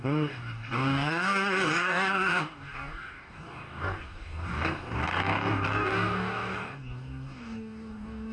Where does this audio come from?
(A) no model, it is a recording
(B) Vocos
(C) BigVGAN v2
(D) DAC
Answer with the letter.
D